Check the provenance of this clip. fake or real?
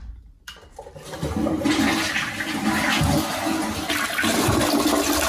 real